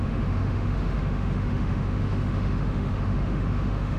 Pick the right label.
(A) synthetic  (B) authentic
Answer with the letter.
A